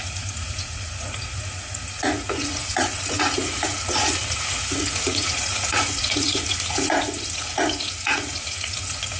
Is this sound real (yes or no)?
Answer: no